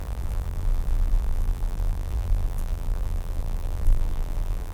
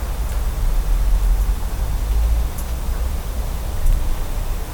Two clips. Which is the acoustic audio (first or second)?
second